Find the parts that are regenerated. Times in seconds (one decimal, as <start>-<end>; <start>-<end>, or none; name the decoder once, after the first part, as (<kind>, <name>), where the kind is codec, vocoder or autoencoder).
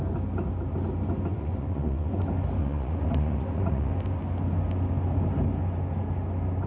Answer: 1.3-2.2 (vocoder, Vocos); 2.6-3.9